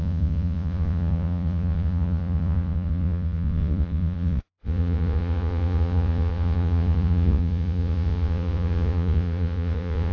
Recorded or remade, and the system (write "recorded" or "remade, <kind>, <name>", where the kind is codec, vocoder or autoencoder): remade, vocoder, Vocos